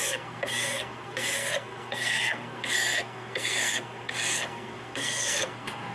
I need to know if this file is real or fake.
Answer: fake